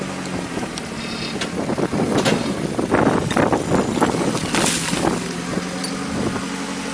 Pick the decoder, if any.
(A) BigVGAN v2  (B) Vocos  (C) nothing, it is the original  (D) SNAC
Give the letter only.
C